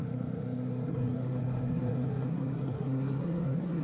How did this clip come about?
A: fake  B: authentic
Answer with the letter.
A